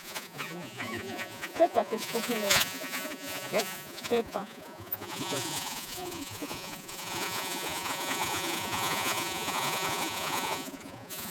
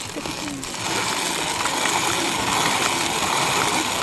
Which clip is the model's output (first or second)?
first